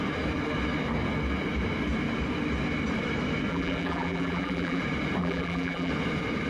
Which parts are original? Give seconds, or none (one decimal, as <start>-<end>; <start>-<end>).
0.0-3.5; 4.8-5.2; 5.9-6.5